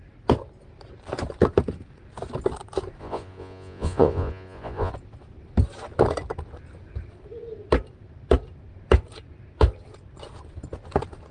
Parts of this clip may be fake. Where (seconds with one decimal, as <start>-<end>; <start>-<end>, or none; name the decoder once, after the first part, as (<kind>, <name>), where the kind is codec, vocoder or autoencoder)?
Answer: 3.0-4.9 (vocoder, Vocos)